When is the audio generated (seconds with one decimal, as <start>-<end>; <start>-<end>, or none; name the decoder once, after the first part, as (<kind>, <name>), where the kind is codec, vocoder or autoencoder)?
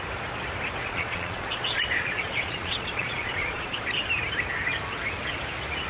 0.8-3.8 (vocoder, Vocos)